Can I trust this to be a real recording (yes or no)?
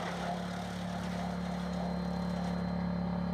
yes